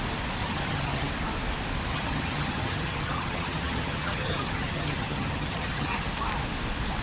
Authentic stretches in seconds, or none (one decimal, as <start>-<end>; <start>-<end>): 0.0-0.4; 1.1-1.9; 6.1-7.0